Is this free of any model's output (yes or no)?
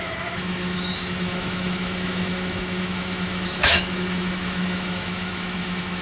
no